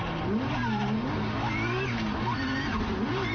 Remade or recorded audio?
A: recorded